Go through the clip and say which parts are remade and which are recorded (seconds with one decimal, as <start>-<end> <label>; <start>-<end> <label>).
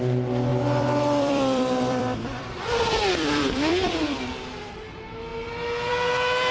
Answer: 0.0-0.5 recorded; 0.5-4.3 remade; 4.3-6.5 recorded